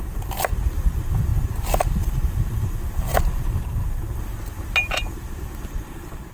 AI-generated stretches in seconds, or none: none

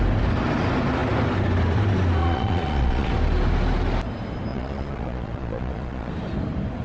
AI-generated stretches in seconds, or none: 2.2-3.1 (vocoder, Vocos); 4.5-6.1